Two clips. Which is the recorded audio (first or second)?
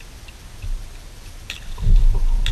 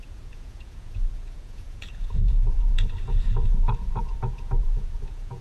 first